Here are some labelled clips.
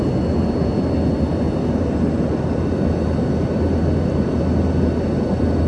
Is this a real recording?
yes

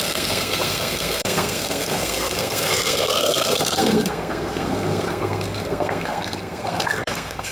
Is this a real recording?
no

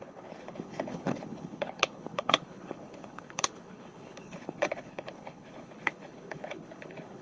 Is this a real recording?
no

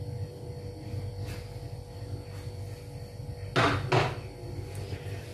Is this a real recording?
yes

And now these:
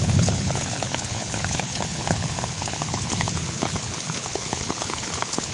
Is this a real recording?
no